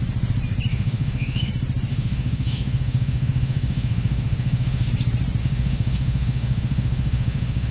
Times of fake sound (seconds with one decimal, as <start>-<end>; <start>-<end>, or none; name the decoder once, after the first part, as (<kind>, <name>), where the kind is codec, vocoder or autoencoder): 0.7-1.5 (autoencoder, DAC-VAE); 1.9-4.9; 5.4-7.7